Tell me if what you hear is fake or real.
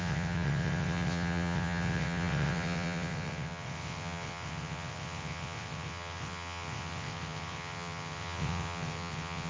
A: fake